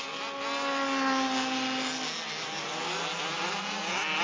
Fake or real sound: real